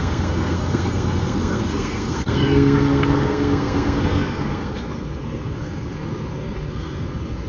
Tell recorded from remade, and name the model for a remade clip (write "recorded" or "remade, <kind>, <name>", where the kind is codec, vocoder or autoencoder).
remade, codec, SNAC